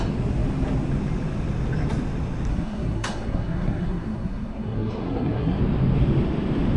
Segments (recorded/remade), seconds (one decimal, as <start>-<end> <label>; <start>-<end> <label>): 0.0-2.5 recorded; 2.5-5.6 remade; 5.6-6.8 recorded